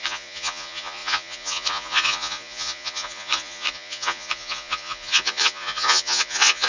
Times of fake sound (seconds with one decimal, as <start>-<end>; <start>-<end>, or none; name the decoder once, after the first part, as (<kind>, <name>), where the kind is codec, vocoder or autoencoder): 0.0-6.7 (vocoder, Vocos)